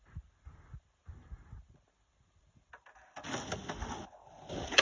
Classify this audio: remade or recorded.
recorded